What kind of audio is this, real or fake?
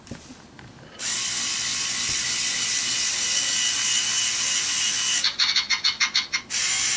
real